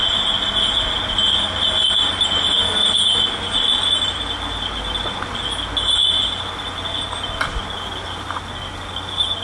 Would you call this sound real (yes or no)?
yes